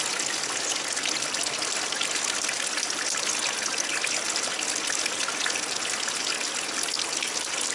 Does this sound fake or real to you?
real